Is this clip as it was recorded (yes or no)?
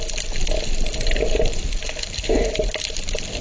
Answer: yes